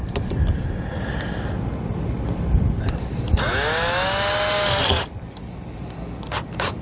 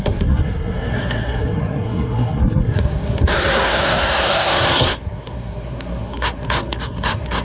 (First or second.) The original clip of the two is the first